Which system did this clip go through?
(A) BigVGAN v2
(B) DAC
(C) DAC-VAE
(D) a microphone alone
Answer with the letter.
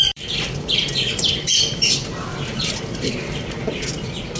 A